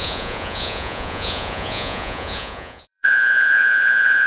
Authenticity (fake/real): fake